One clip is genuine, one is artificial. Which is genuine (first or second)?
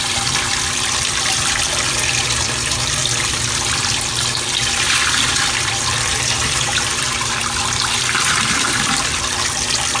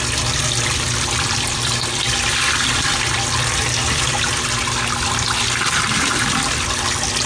second